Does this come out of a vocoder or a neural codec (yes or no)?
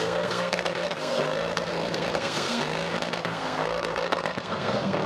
yes